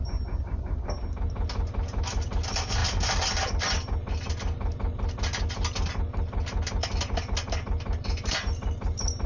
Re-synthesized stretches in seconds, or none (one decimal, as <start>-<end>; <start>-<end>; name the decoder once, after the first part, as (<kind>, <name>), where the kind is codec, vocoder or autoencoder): none